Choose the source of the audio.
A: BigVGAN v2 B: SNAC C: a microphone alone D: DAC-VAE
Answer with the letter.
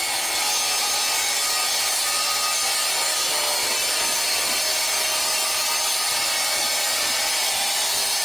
C